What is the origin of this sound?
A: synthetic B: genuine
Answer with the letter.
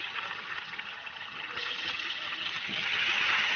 A